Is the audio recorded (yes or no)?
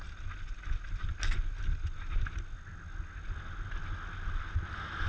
yes